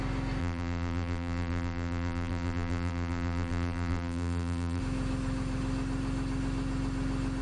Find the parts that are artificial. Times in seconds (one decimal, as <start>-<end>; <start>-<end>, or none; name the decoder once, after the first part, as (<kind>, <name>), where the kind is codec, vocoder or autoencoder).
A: 0.4-4.8 (vocoder, BigVGAN v2)